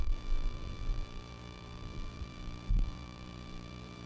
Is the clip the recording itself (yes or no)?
no